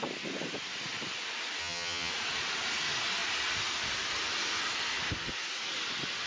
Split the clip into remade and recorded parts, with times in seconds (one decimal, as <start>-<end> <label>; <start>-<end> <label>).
0.0-1.6 recorded; 1.6-2.1 remade; 2.1-6.3 recorded